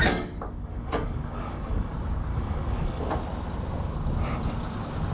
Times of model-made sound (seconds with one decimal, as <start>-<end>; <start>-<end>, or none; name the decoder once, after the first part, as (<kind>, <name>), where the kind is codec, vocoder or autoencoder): 0.0-1.9 (codec, DAC); 2.3-3.0